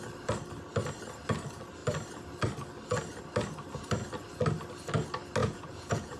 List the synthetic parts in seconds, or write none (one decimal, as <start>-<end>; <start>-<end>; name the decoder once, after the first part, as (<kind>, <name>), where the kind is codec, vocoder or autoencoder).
5.4-6.2 (vocoder, Vocos)

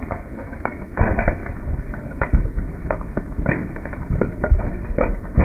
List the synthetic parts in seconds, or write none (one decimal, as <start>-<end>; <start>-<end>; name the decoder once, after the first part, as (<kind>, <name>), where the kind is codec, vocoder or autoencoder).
0.0-5.4 (codec, SNAC)

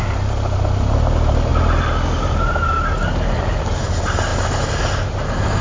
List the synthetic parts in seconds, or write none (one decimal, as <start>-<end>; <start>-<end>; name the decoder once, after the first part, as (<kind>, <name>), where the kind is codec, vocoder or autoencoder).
none